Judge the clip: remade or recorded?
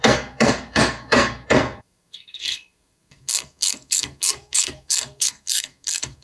remade